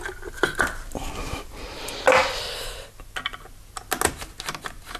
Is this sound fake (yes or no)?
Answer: no